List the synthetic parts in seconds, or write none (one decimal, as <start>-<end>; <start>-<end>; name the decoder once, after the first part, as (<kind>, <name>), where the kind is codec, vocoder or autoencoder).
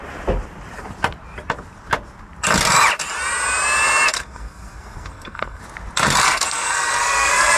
4.1-5.6 (codec, SNAC); 6.2-7.6